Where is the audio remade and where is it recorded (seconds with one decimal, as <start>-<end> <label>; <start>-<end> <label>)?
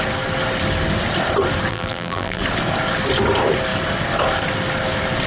0.0-1.7 recorded; 1.7-2.4 remade; 2.4-5.3 recorded